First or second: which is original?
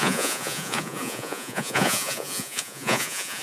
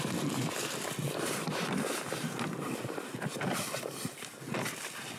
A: second